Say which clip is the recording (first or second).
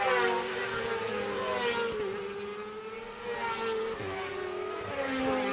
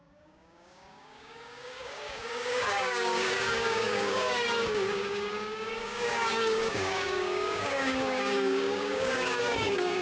first